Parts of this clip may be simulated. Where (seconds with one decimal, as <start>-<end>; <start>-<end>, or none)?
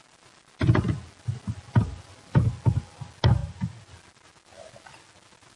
none